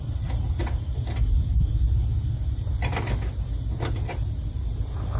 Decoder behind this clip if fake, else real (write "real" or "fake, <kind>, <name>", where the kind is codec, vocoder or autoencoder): real